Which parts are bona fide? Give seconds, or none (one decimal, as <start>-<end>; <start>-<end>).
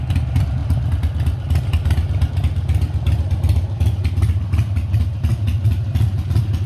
0.0-6.7